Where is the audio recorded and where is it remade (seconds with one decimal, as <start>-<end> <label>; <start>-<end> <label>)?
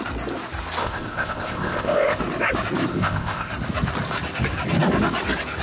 0.0-0.8 recorded; 0.8-2.2 remade; 2.2-2.9 recorded; 2.9-3.5 remade; 3.5-5.6 recorded